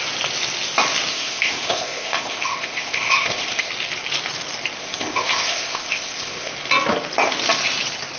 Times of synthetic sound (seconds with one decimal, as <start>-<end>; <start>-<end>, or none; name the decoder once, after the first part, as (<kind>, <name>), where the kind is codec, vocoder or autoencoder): 1.1-3.7 (codec, ZipCodec); 4.8-6.5